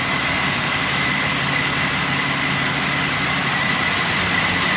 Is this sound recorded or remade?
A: recorded